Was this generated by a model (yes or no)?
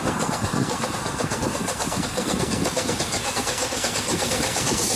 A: yes